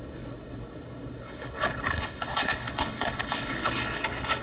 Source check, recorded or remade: remade